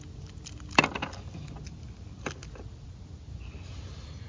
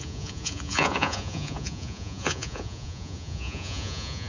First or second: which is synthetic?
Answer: second